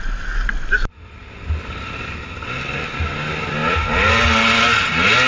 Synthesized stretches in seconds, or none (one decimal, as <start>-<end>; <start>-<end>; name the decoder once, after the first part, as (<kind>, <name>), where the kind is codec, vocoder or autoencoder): none